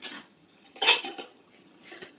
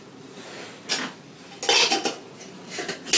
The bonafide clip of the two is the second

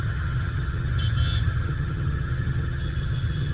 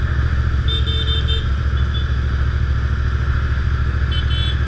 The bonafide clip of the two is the second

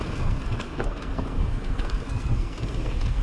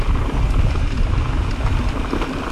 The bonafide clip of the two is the second